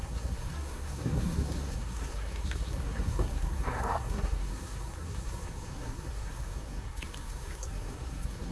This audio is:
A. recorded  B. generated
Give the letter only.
B